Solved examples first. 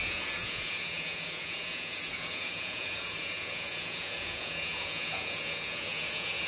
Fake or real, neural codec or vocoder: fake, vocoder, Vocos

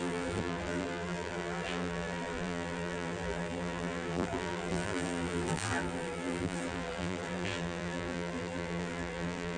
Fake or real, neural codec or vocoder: fake, vocoder, BigVGAN v2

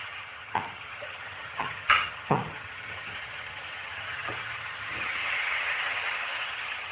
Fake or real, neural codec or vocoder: fake, vocoder, HiFi-GAN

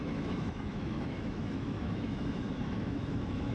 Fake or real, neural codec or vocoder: fake, autoencoder, DAC-VAE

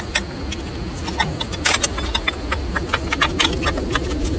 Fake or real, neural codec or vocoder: real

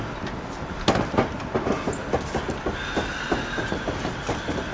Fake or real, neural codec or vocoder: real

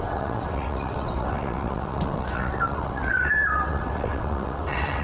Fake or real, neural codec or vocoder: fake, vocoder, WaveNeXt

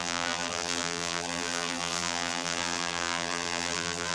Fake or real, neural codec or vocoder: fake, vocoder, BigVGAN v2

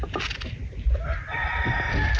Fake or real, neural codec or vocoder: fake, vocoder, BigVGAN v2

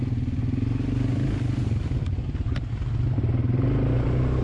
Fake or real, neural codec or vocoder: real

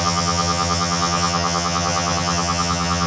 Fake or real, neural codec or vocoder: fake, vocoder, HiFi-GAN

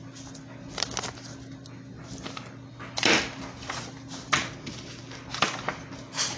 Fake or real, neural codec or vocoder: real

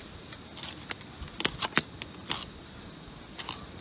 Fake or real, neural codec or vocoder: real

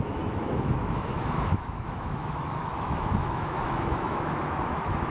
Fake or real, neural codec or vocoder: fake, autoencoder, DAC-VAE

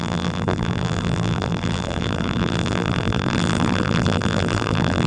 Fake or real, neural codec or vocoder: fake, vocoder, BigVGAN v2